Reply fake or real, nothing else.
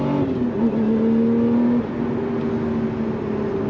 real